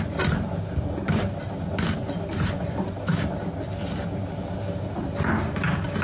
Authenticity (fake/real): real